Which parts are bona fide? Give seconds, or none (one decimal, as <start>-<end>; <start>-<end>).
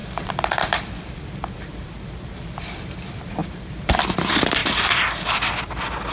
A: 4.6-6.1